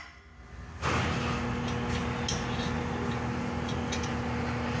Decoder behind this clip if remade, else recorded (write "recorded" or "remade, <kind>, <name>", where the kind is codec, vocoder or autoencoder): recorded